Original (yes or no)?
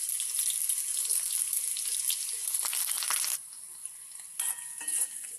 yes